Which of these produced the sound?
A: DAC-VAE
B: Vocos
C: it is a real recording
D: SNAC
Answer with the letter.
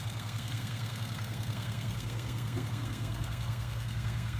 D